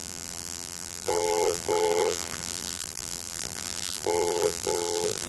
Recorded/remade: remade